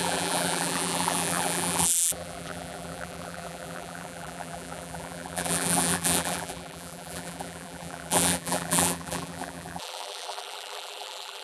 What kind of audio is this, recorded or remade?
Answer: remade